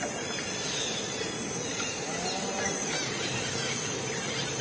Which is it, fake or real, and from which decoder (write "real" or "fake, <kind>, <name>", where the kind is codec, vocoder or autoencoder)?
real